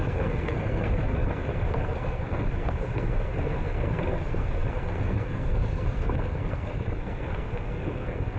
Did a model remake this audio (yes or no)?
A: yes